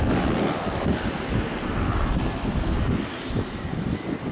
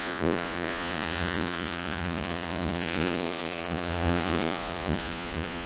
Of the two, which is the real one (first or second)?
first